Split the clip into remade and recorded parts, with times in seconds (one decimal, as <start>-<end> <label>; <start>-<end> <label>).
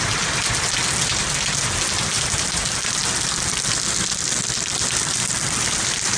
0.0-6.2 recorded